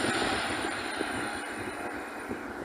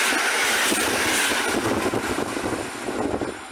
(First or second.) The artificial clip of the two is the first